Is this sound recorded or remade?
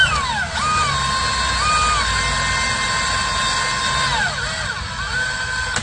recorded